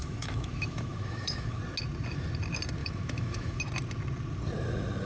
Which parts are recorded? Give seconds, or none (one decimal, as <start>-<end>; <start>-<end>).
1.6-2.8; 3.6-5.1